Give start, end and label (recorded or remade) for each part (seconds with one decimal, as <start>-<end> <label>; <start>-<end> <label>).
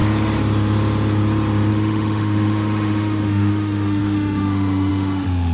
0.0-1.7 recorded; 1.7-5.5 remade